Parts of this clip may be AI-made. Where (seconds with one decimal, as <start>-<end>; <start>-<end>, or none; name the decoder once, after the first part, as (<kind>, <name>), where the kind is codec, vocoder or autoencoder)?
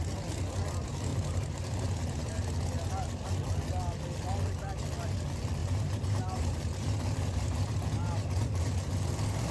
1.1-2.3 (vocoder, BigVGAN v2); 5.6-9.5